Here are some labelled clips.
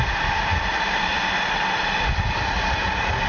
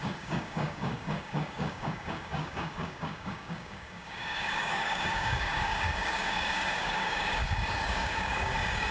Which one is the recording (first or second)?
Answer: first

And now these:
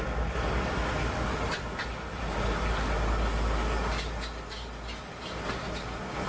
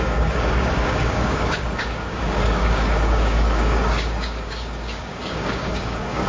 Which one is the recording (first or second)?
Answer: first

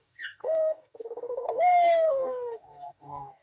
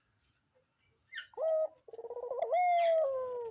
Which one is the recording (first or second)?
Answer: second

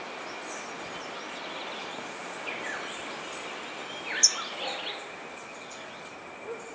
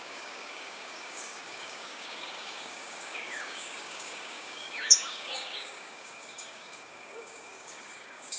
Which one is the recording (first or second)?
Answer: first